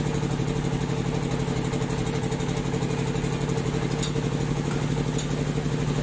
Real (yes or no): yes